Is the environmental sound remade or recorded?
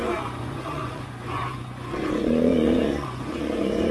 remade